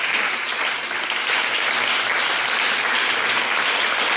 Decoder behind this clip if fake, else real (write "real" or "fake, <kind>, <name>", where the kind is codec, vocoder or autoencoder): real